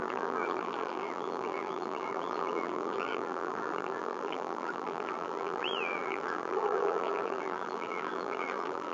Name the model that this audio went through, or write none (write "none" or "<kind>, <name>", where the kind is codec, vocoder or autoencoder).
vocoder, BigVGAN v2